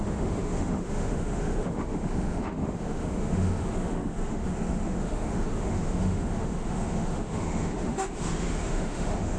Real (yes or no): no